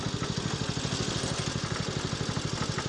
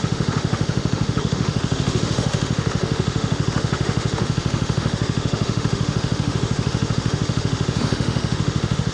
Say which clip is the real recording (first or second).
first